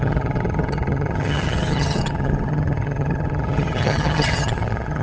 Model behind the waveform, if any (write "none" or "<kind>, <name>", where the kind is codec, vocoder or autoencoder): vocoder, HiFi-GAN